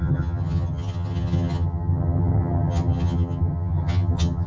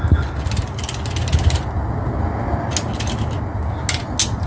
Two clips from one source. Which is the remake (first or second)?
first